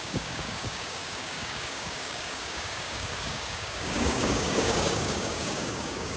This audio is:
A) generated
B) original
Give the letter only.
A